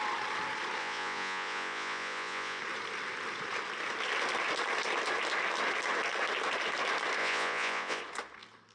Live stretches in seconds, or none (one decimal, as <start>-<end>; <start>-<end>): 0.0-0.8; 2.6-7.2; 8.0-8.7